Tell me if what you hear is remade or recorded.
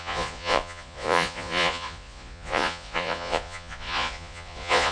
remade